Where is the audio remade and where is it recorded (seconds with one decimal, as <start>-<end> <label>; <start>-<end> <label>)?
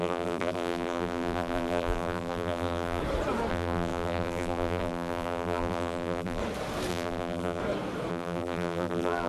0.0-3.0 remade; 3.0-3.5 recorded; 3.5-6.4 remade; 6.4-6.9 recorded; 6.9-7.6 remade; 7.6-8.1 recorded; 8.1-9.3 remade